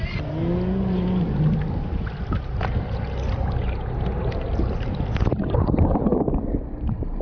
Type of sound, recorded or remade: recorded